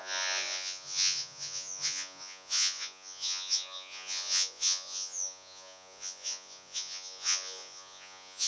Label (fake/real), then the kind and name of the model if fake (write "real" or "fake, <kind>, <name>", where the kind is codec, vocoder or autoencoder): fake, vocoder, Vocos